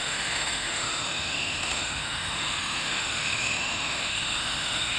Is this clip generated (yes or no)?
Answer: yes